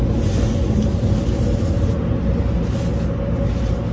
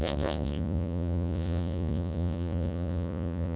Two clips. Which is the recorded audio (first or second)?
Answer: first